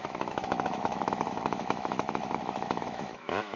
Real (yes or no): no